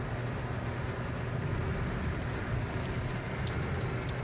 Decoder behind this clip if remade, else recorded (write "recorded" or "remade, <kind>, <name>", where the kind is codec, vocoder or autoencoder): recorded